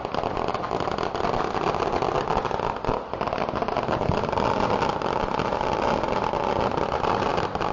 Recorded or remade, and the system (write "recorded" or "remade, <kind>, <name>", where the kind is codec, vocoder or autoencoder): recorded